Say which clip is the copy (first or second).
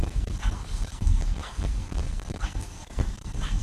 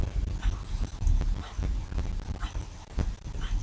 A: first